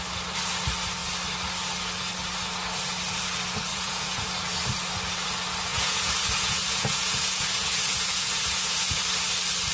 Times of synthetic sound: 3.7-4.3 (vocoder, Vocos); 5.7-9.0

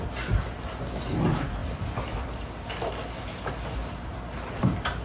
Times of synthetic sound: none